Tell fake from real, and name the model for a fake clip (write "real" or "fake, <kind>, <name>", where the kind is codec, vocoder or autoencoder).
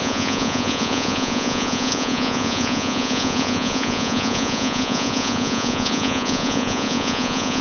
fake, vocoder, Vocos